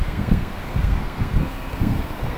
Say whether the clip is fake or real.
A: fake